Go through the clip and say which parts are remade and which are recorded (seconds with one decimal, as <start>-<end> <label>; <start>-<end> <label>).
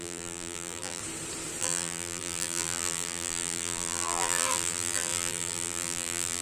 0.0-1.0 remade; 1.0-1.6 recorded; 1.6-6.4 remade